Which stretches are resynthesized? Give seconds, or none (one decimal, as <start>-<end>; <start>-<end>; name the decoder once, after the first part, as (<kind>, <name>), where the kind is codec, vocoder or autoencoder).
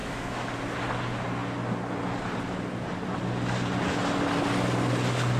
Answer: 0.0-0.5 (autoencoder, DAC-VAE)